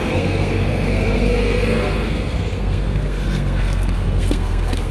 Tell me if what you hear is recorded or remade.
remade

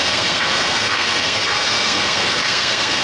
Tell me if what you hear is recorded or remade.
remade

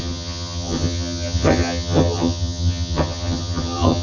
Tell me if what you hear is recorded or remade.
remade